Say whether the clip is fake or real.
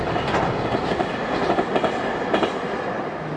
real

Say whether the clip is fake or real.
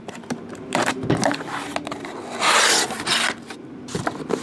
real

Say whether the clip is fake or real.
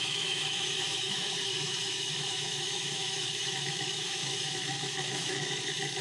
fake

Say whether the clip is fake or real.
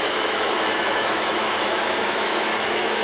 fake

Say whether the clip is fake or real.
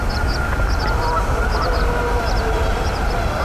real